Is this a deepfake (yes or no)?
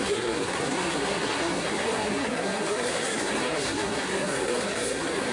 yes